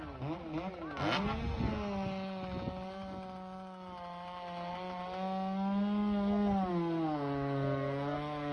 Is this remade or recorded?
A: recorded